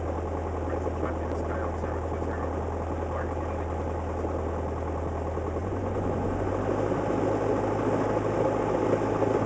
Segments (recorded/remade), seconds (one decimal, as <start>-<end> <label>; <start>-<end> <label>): 0.0-5.6 recorded; 5.6-6.5 remade; 6.5-9.5 recorded